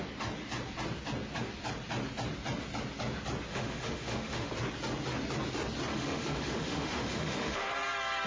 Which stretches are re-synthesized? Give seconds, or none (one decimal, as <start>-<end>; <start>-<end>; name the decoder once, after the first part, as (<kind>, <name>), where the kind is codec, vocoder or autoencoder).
3.5-4.5 (autoencoder, DAC-VAE); 5.9-7.7